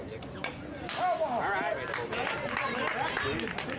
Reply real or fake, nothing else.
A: real